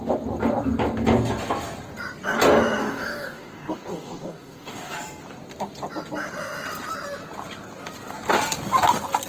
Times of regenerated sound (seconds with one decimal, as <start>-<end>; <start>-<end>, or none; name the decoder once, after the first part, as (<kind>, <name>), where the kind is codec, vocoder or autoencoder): 2.8-4.9 (codec, DAC)